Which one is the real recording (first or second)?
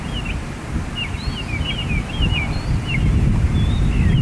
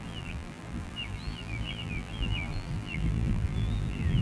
first